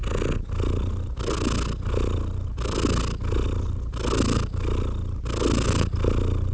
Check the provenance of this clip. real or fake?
real